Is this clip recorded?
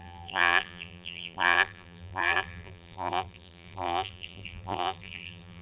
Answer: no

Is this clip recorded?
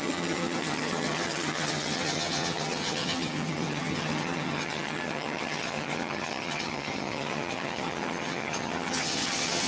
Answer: no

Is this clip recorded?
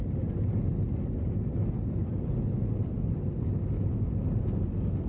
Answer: yes